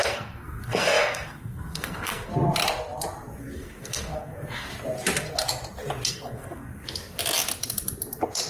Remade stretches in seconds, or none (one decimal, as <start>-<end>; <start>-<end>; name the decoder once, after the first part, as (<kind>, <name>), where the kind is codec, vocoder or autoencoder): 0.0-2.3 (codec, SNAC); 3.4-4.7; 6.1-6.9